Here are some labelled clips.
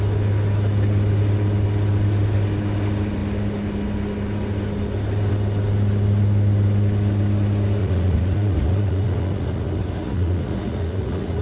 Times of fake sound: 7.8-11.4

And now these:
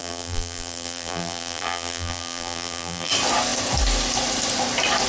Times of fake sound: 0.0-3.1

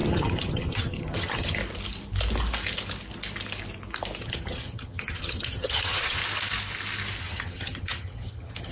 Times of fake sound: 0.0-1.6; 4.2-6.2; 7.2-8.7

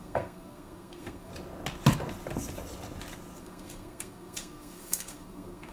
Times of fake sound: 0.0-1.3; 3.4-5.7

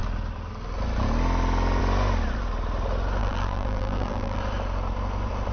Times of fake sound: 3.2-4.4

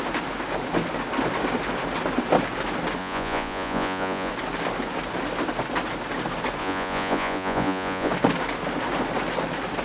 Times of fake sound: 3.0-4.3; 6.6-8.1

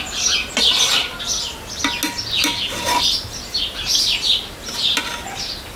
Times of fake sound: none

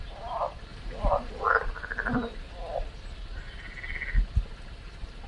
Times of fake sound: 0.0-2.3